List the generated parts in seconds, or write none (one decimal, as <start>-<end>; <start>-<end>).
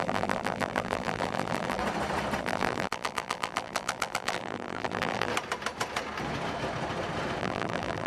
0.0-1.8; 2.4-5.3; 7.4-8.1